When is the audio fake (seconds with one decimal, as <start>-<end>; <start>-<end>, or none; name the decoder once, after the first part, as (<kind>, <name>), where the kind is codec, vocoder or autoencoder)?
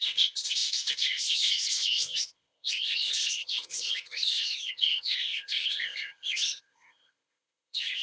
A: 0.0-8.0 (codec, ZipCodec)